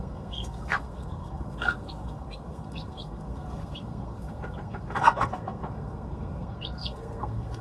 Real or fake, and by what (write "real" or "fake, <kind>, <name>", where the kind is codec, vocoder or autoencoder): fake, codec, SNAC